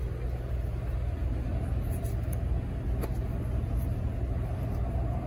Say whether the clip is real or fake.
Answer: real